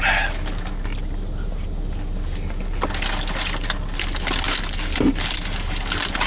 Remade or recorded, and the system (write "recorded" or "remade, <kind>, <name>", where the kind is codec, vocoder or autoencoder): recorded